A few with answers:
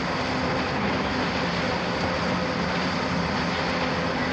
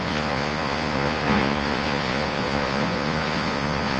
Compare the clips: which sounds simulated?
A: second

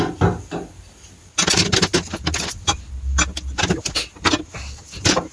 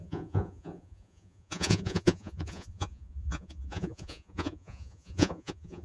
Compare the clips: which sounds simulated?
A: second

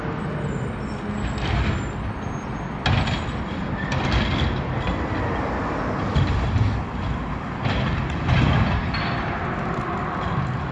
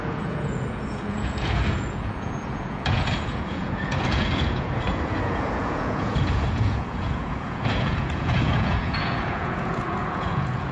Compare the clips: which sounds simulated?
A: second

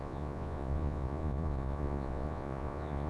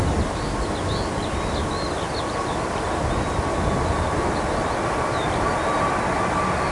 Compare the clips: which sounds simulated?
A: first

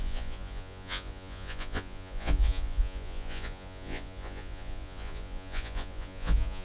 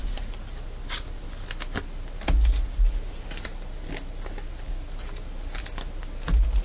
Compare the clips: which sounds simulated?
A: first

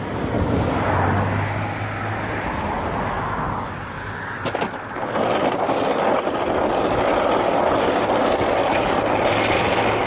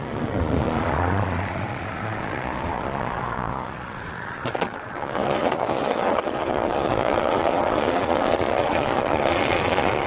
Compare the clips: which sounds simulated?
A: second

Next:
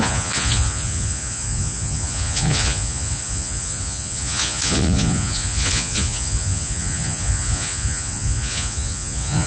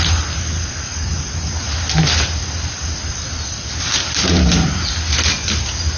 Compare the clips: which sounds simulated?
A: first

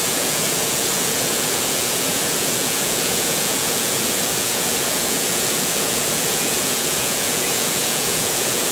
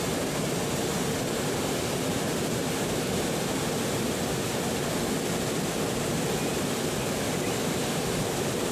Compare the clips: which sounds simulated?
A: first